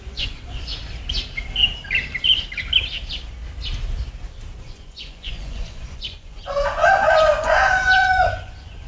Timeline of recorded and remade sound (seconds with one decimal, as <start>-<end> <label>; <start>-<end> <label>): 0.0-0.7 remade; 0.7-4.6 recorded; 4.6-8.9 remade